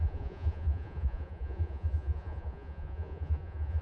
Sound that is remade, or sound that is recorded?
remade